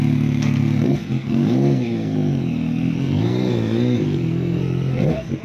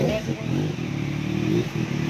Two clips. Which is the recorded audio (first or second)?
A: second